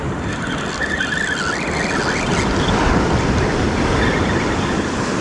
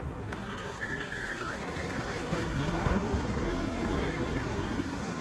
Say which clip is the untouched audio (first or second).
first